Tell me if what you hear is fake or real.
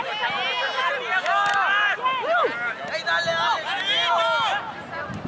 real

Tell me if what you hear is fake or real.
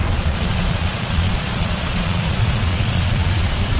fake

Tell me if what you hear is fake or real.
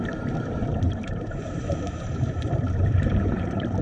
fake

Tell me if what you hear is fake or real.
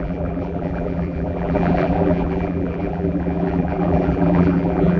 fake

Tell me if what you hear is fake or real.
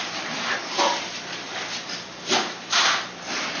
fake